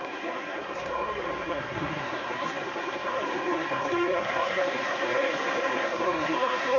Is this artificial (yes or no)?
yes